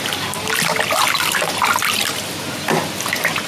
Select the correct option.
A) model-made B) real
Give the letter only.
B